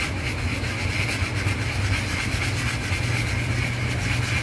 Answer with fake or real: real